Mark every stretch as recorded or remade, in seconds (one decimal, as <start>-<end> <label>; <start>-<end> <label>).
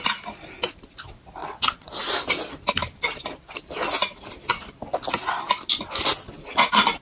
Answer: 0.0-1.4 recorded; 1.4-1.9 remade; 1.9-7.0 recorded